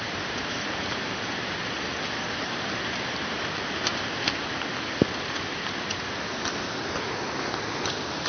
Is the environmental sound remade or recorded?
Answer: recorded